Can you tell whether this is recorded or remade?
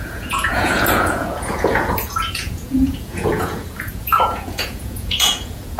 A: remade